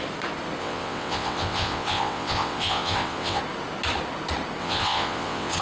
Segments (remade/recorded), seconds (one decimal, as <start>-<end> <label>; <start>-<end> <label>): 0.0-0.6 recorded; 0.6-3.4 remade; 3.4-4.6 recorded; 4.6-5.6 remade